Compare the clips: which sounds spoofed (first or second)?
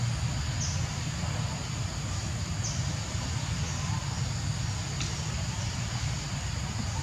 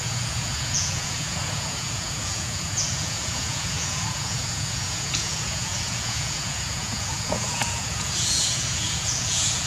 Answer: second